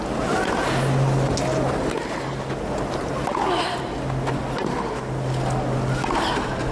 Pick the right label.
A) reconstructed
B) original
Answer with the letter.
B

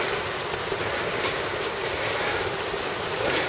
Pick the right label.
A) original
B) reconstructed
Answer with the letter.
A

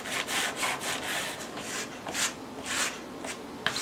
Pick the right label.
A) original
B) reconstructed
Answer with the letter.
A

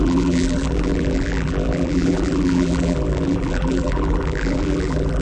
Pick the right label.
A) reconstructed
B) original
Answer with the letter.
A